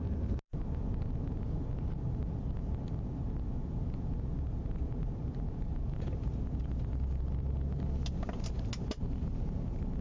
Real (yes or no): yes